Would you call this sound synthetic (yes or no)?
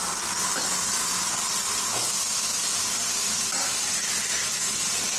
no